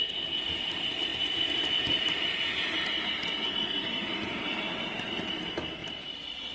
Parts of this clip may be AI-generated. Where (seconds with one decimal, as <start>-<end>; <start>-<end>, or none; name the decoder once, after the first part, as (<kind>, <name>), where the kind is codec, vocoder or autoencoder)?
1.1-5.0 (vocoder, BigVGAN v2)